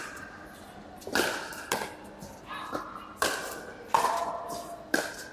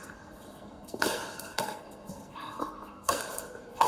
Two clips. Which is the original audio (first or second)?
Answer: first